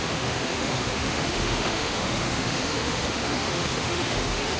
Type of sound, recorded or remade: remade